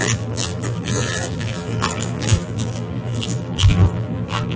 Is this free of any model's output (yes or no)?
no